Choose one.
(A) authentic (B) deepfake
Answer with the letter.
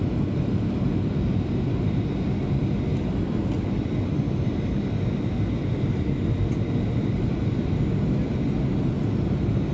A